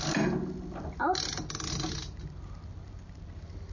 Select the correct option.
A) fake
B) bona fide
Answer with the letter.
B